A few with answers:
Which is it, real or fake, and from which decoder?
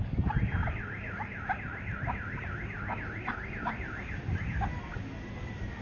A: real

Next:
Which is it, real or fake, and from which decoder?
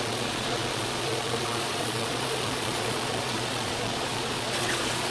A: fake, vocoder, Vocos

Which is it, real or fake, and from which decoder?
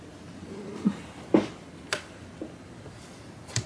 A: real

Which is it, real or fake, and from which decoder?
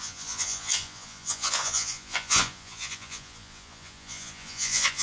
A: fake, vocoder, Vocos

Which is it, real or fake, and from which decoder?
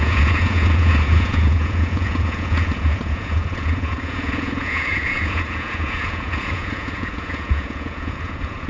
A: fake, vocoder, Vocos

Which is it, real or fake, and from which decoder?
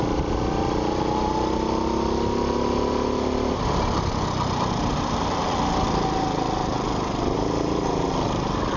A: real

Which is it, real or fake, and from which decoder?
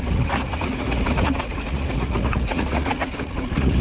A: fake, vocoder, Vocos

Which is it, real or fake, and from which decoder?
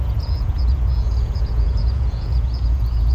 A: fake, vocoder, Vocos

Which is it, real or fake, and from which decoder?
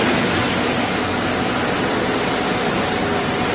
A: real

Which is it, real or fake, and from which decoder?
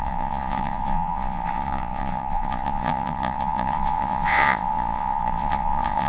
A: fake, vocoder, Vocos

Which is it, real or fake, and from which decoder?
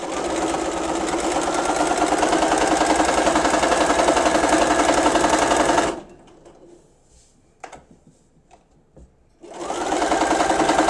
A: real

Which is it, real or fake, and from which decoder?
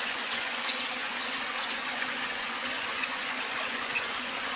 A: fake, vocoder, Vocos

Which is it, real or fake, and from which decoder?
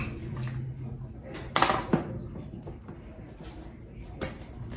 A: real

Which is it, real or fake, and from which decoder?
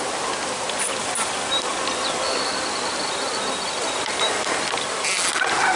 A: real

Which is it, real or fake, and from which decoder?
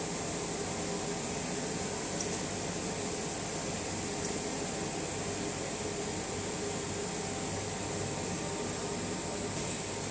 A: real